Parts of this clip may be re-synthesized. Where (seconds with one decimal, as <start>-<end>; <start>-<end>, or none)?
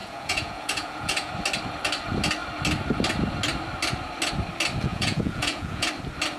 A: 0.0-1.3; 4.9-5.9